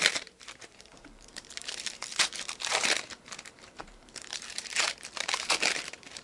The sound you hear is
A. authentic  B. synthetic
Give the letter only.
B